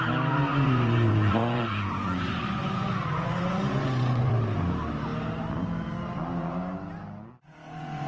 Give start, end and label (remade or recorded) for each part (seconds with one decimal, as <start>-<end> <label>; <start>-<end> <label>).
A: 0.0-0.5 recorded; 0.5-4.3 remade; 4.3-8.1 recorded